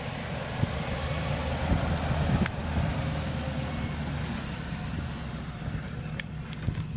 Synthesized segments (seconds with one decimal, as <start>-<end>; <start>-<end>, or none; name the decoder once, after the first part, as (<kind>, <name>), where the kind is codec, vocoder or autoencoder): none